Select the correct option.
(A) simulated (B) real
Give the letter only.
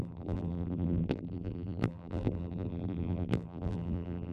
A